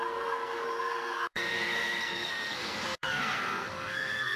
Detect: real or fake fake